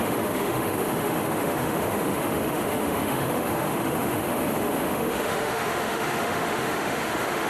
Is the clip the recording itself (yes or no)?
no